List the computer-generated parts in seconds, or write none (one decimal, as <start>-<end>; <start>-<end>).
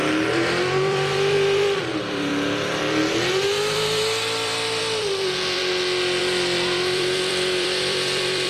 0.0-5.6; 6.2-8.5